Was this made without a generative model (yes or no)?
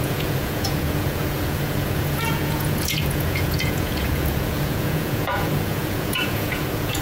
no